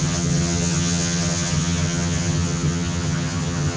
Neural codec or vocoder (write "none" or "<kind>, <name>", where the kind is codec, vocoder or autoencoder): vocoder, HiFi-GAN